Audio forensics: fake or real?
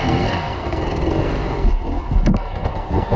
fake